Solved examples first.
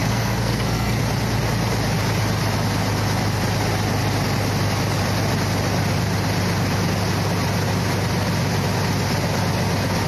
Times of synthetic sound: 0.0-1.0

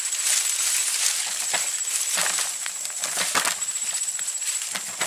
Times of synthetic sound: none

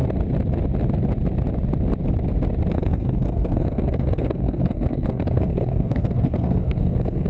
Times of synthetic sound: 2.7-7.3

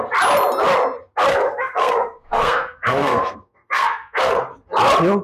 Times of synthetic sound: 1.3-4.4

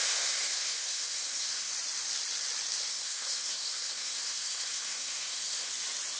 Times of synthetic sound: 0.0-1.7; 2.9-5.7